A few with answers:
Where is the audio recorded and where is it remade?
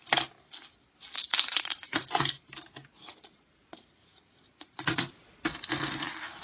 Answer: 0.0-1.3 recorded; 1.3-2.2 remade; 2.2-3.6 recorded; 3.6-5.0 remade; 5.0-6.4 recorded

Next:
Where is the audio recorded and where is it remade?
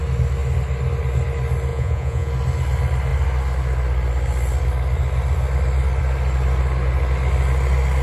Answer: 0.0-1.7 recorded; 1.7-2.3 remade; 2.3-8.0 recorded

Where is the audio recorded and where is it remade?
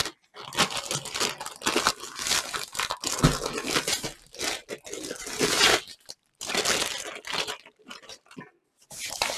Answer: 0.0-9.4 recorded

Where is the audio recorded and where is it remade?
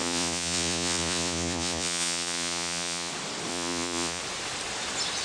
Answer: 0.0-3.1 remade; 3.1-3.5 recorded; 3.5-4.2 remade; 4.2-5.2 recorded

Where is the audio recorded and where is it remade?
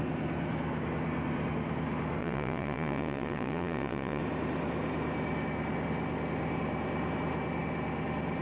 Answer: 0.0-2.2 recorded; 2.2-4.2 remade; 4.2-8.4 recorded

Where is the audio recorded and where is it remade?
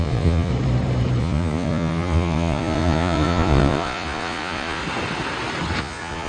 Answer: 0.0-0.5 remade; 0.5-1.2 recorded; 1.2-4.8 remade; 4.8-5.8 recorded; 5.8-6.3 remade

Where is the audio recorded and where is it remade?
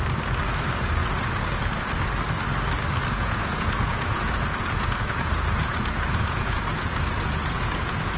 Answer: 0.0-1.0 recorded; 1.0-1.7 remade; 1.7-3.2 recorded; 3.2-8.2 remade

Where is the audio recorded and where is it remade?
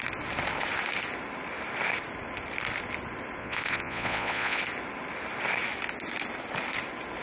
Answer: 0.0-3.4 recorded; 3.4-4.6 remade; 4.6-7.2 recorded